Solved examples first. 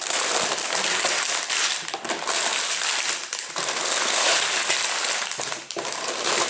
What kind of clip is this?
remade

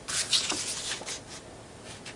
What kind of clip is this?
recorded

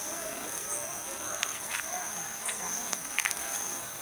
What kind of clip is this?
remade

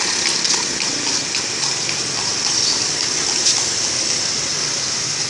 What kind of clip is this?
recorded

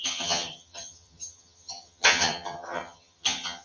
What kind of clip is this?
remade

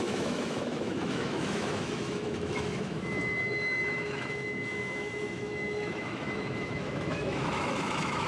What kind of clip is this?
remade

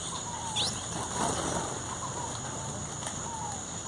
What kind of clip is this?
recorded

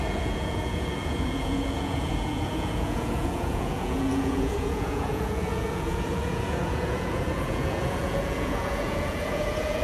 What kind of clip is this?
remade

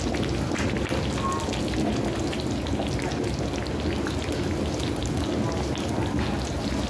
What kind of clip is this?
recorded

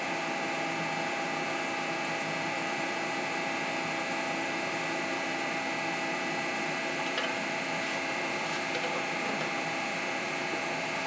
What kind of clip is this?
recorded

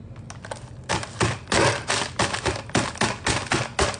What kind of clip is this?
recorded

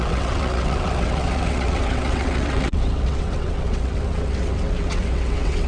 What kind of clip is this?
remade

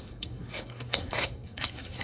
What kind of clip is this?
remade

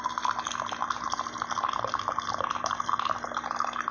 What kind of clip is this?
recorded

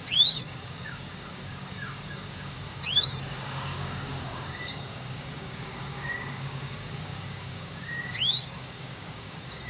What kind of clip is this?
remade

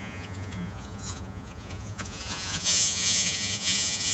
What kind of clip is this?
remade